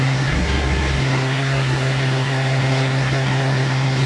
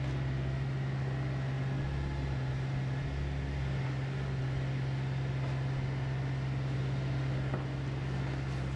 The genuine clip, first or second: second